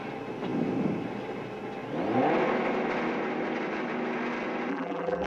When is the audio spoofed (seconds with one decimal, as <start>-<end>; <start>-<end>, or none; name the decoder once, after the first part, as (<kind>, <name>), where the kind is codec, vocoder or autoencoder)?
4.7-5.3 (vocoder, BigVGAN v2)

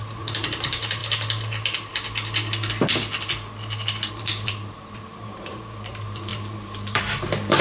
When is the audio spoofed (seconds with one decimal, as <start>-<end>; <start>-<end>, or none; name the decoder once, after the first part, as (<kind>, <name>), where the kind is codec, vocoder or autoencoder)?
0.0-1.0 (vocoder, BigVGAN v2); 4.1-7.6

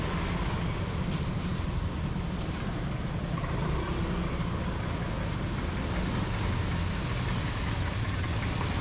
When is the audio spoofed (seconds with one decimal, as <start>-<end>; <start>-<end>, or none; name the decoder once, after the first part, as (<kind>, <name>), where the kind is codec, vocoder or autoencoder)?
1.5-4.0 (vocoder, BigVGAN v2)